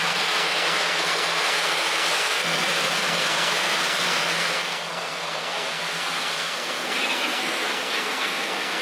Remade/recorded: remade